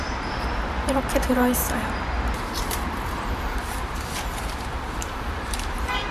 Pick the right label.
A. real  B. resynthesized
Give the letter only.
B